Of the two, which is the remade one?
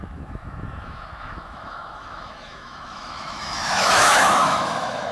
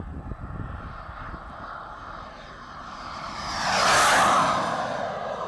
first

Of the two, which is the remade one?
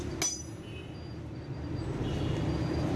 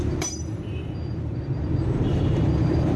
second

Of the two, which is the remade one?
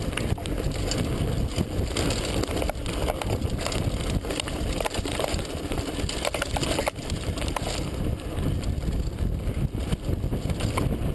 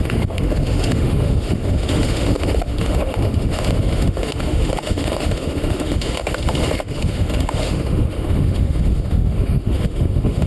second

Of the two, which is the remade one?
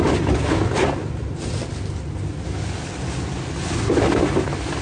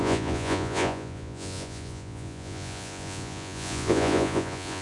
second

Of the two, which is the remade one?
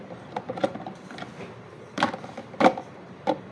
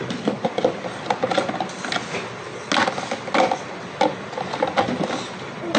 first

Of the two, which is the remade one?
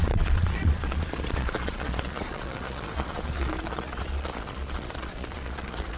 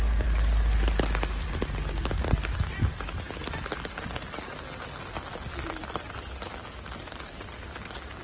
first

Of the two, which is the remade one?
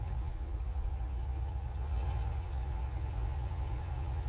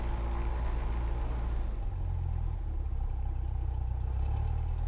first